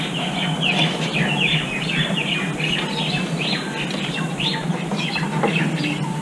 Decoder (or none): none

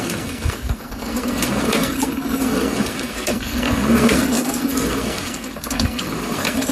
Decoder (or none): codec, SNAC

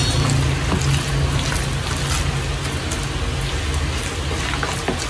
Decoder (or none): none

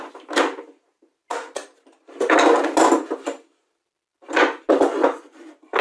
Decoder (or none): none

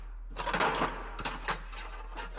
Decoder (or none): none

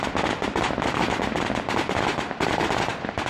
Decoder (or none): none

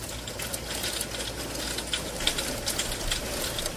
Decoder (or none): none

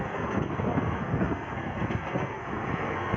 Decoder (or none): codec, SNAC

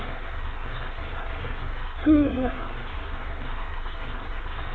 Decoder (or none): codec, SNAC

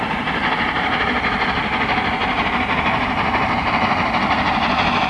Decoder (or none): none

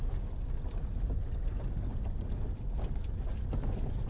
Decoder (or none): none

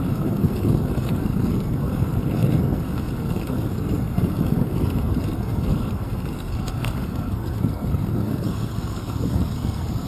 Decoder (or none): codec, SNAC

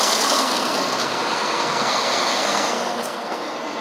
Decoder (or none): codec, SNAC